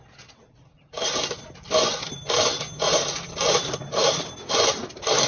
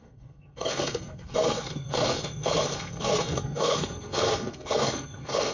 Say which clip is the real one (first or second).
first